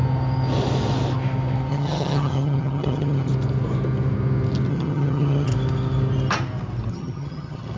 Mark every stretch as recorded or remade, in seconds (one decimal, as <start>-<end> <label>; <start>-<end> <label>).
0.0-1.7 recorded; 1.7-3.3 remade; 3.3-4.7 recorded; 4.7-5.5 remade; 5.5-6.9 recorded; 6.9-7.8 remade